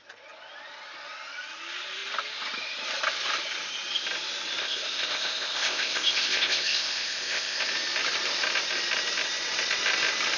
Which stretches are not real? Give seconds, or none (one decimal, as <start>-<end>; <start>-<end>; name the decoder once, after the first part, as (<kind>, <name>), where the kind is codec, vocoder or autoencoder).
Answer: 4.6-7.6 (codec, ZipCodec)